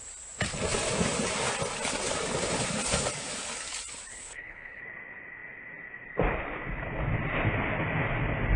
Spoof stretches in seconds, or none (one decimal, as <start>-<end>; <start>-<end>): 4.1-4.8